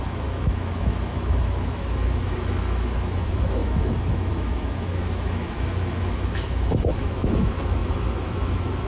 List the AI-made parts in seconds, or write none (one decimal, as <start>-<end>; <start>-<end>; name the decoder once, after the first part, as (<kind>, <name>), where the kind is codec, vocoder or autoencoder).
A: 0.0-8.9 (autoencoder, DAC-VAE)